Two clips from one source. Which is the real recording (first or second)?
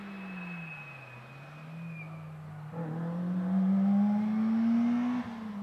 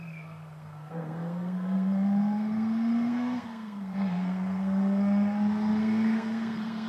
first